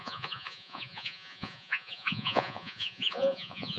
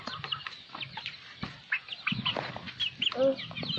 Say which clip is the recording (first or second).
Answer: second